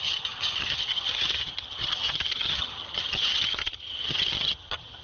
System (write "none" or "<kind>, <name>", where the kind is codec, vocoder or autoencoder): vocoder, HiFi-GAN